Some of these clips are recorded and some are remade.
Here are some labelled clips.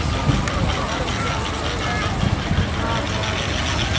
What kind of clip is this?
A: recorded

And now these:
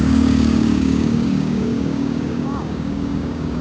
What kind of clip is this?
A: remade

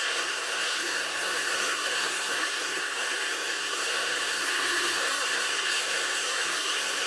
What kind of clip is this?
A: remade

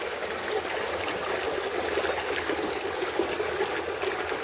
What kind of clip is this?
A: recorded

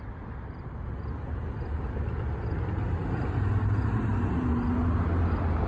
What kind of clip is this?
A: recorded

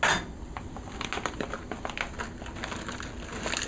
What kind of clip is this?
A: recorded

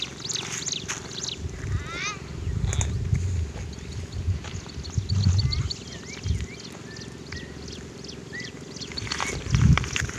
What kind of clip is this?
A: recorded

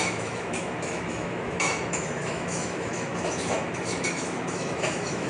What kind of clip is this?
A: remade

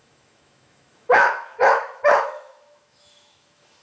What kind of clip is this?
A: remade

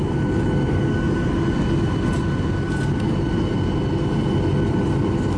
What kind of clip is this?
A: recorded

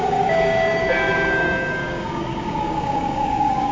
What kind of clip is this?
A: remade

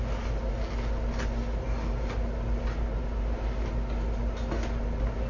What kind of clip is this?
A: recorded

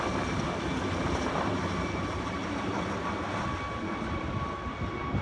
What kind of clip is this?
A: recorded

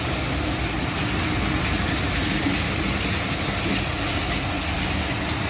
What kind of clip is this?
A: recorded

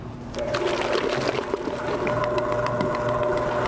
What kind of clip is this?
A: recorded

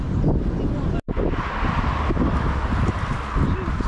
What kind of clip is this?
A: recorded